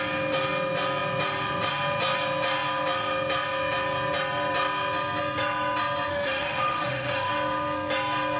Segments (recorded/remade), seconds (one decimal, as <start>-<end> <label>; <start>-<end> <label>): 0.0-6.1 recorded; 6.1-7.3 remade; 7.3-8.4 recorded